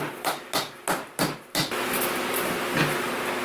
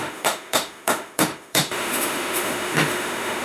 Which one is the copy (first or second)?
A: second